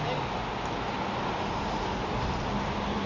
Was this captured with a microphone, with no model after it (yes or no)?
yes